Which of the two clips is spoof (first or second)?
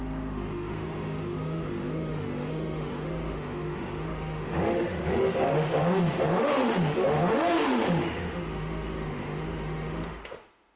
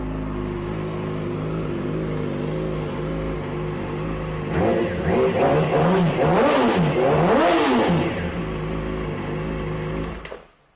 first